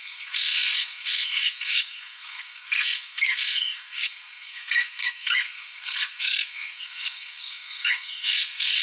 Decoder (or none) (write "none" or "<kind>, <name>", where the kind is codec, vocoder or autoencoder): codec, SNAC